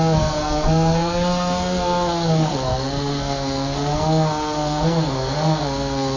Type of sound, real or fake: fake